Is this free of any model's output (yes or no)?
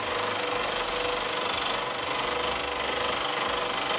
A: yes